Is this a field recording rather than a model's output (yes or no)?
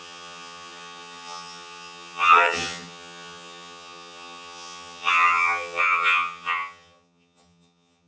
no